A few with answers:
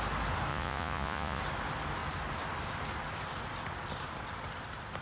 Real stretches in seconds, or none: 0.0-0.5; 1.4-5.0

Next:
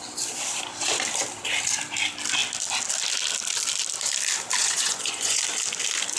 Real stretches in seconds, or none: 0.0-4.6; 5.4-6.2